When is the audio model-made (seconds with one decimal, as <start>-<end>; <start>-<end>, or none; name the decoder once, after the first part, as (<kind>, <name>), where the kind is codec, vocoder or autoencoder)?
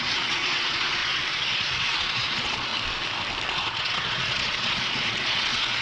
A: 0.0-2.7 (vocoder, Vocos); 3.5-5.8